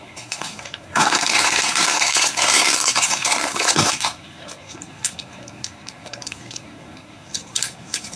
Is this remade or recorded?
remade